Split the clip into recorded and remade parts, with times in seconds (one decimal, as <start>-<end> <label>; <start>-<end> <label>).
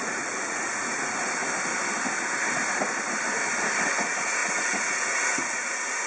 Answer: 0.0-1.4 remade; 1.4-3.8 recorded; 3.8-6.1 remade